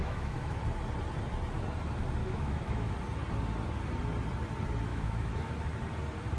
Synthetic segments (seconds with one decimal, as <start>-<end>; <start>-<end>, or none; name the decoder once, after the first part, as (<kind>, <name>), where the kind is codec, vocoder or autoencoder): 0.0-0.6 (autoencoder, DAC-VAE); 2.2-2.9; 4.9-5.5